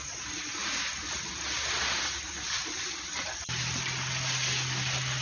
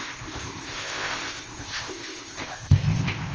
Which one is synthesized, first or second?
second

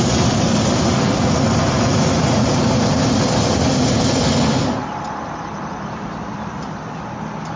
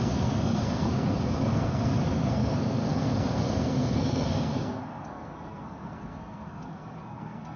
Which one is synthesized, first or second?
second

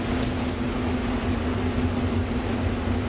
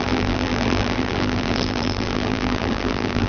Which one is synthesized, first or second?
second